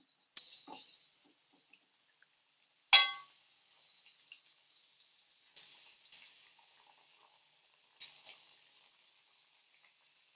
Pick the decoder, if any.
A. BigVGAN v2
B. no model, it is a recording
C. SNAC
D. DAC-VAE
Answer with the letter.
B